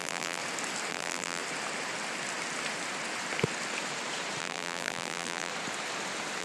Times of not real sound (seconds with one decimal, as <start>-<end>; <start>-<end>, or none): 0.0-0.4; 0.9-1.4; 4.4-5.5